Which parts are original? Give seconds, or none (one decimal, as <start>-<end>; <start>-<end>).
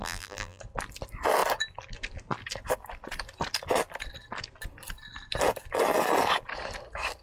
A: 0.6-7.2